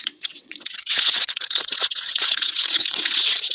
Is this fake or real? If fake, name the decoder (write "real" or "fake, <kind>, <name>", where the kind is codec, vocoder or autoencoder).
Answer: fake, vocoder, WaveNeXt